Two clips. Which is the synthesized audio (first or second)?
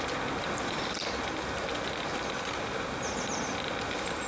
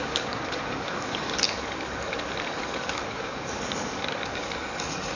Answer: second